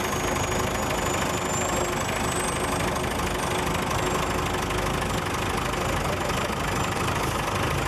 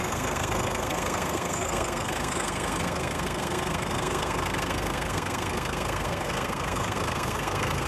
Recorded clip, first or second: first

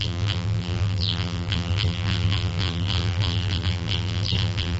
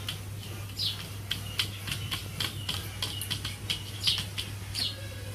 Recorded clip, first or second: second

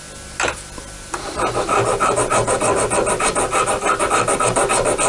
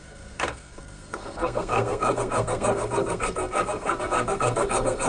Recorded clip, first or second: first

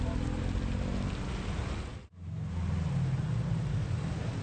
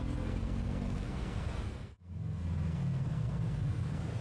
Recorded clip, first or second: first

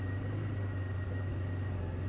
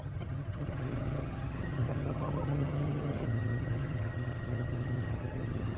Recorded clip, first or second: first